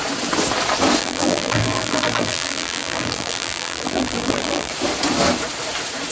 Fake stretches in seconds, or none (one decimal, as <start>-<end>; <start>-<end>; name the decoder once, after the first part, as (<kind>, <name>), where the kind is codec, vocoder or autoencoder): 1.0-4.7 (vocoder, BigVGAN v2)